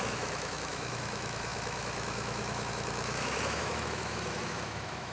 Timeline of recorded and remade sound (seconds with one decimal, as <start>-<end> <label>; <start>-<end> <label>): 0.0-5.1 remade